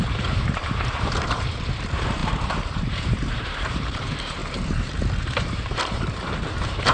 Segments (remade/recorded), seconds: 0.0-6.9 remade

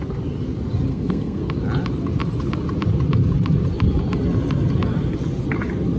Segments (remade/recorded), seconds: 0.0-0.9 recorded; 0.9-1.4 remade; 1.4-6.0 recorded